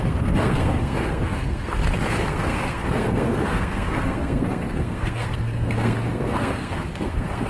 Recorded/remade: remade